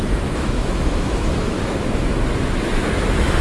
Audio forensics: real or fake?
fake